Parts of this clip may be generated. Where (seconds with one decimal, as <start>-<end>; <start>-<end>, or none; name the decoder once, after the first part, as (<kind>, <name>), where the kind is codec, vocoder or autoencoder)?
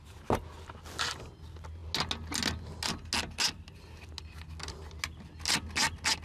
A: none